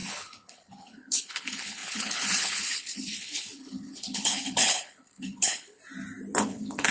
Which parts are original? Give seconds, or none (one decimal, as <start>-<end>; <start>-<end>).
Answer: 5.8-6.4

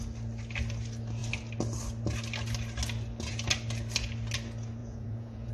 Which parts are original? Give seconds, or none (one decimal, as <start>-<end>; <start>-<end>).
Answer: 0.0-4.8

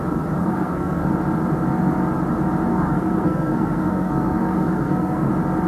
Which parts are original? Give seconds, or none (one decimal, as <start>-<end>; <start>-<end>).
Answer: 0.0-0.4; 1.1-2.7; 5.3-5.7

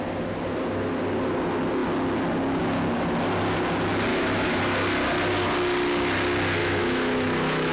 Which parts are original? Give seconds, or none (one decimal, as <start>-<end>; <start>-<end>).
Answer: 0.0-4.1; 4.6-6.6

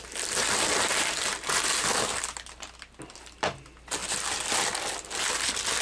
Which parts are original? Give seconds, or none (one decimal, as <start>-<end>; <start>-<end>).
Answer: 0.0-5.8

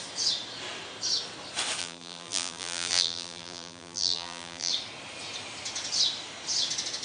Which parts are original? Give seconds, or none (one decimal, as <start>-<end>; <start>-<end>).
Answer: 0.0-1.8; 4.7-7.0

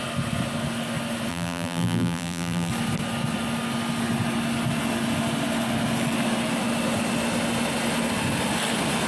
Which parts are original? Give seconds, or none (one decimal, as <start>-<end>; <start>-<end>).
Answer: 0.0-1.3; 2.7-9.1

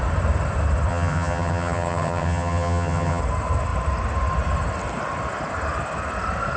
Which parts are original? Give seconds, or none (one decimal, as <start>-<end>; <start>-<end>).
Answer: 0.0-0.9; 3.2-6.6